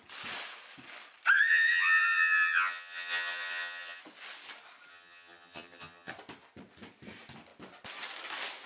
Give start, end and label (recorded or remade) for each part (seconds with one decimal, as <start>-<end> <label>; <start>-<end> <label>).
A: 0.0-1.5 recorded; 1.5-4.0 remade; 4.0-4.9 recorded; 4.9-6.1 remade; 6.1-8.7 recorded